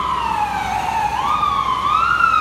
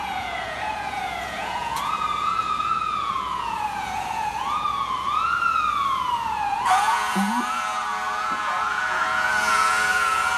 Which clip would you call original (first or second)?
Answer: first